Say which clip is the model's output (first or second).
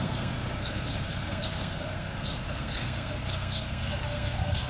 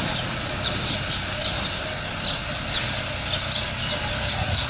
first